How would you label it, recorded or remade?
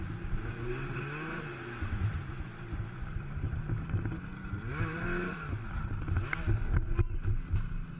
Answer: recorded